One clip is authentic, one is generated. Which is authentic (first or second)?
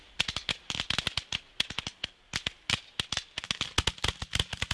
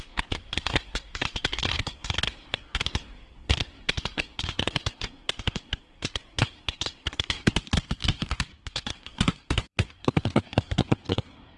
first